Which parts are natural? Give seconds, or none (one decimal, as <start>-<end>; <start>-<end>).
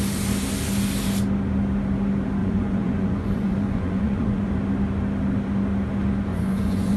0.0-2.4; 4.5-6.3